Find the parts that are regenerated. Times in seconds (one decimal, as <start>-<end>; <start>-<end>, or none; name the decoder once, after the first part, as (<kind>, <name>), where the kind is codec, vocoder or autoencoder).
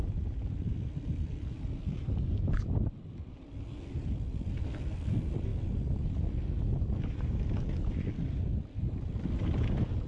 none